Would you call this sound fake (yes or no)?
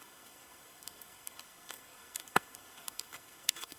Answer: yes